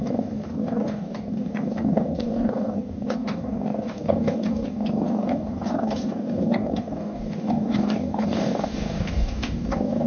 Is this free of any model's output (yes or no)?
no